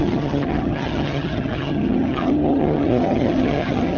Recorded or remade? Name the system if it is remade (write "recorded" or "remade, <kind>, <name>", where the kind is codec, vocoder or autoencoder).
remade, vocoder, HiFi-GAN